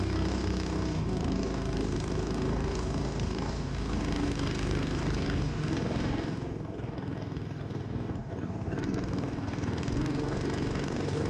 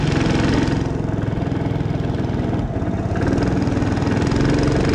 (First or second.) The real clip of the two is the second